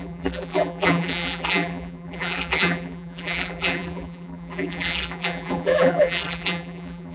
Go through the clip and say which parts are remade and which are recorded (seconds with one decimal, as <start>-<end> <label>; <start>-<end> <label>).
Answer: 0.0-7.1 remade